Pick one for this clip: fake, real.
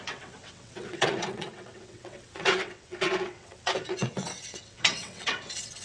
fake